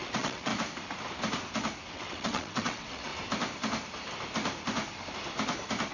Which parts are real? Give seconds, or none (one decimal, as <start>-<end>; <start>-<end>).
0.5-1.9; 3.1-5.9